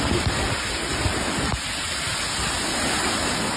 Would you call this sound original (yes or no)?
yes